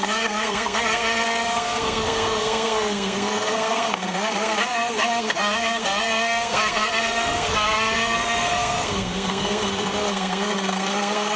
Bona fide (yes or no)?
no